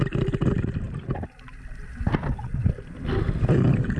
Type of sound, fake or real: real